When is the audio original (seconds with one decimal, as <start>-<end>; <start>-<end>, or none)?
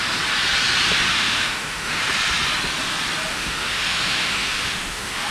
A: 0.0-1.1; 2.0-3.3